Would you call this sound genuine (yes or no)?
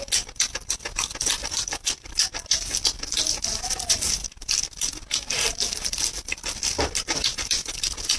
yes